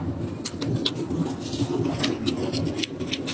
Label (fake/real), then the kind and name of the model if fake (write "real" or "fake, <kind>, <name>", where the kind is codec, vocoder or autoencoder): real